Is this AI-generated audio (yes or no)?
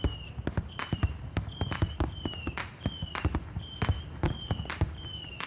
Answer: no